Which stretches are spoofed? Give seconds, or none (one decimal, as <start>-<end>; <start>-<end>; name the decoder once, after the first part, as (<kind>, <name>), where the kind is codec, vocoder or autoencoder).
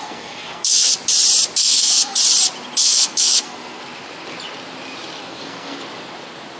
0.0-0.9 (codec, SNAC); 1.6-2.2; 2.8-3.8; 5.2-5.8